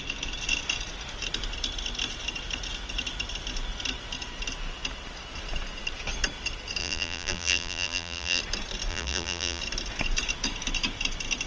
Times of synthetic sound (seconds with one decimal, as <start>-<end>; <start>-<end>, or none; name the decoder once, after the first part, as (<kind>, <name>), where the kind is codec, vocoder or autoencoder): 6.8-8.4 (vocoder, BigVGAN v2); 8.9-9.6